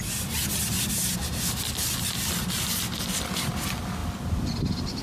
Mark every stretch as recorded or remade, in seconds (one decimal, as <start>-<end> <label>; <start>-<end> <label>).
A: 0.0-5.0 recorded

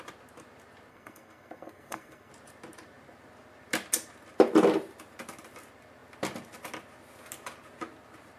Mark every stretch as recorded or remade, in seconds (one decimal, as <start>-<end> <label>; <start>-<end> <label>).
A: 0.0-0.9 recorded; 0.9-2.3 remade; 2.3-8.4 recorded

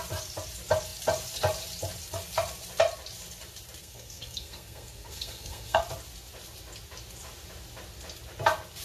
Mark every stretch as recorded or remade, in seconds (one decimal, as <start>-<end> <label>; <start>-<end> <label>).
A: 0.0-3.8 recorded; 3.8-5.8 remade; 5.8-8.8 recorded